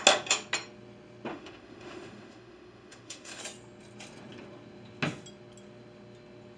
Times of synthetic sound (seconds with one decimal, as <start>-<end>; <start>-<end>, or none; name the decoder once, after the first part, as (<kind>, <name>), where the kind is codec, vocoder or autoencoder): 1.3-3.4 (autoencoder, DAC-VAE)